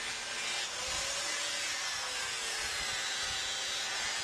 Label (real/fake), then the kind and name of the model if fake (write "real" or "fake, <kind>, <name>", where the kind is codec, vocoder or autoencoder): real